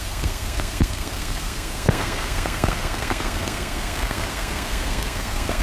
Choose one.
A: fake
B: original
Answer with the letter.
A